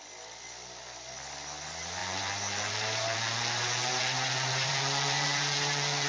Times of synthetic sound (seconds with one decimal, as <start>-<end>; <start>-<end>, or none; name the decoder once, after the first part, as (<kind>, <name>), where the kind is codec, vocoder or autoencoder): 2.0-6.1 (vocoder, BigVGAN v2)